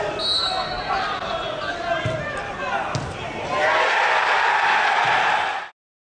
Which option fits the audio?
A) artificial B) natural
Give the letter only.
B